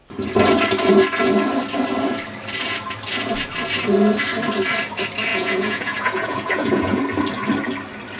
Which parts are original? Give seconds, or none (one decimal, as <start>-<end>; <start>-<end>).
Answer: 0.0-5.3; 7.0-8.2